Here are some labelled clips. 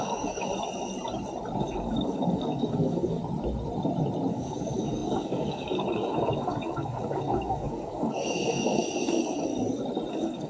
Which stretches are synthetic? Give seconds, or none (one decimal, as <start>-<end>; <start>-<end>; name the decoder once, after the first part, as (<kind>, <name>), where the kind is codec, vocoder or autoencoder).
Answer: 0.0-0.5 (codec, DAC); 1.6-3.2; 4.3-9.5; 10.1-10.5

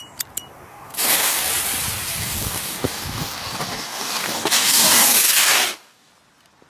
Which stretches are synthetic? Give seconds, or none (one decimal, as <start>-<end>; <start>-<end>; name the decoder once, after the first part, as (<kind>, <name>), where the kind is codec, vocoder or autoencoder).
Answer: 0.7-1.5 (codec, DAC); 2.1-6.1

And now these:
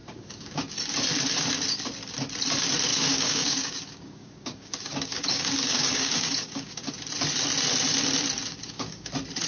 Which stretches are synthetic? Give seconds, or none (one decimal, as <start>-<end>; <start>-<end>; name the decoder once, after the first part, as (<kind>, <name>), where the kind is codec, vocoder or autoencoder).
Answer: 0.0-0.8 (codec, DAC); 2.9-6.9; 8.5-9.1